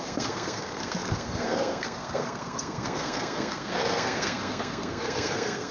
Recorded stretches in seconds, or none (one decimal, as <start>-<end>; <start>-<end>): none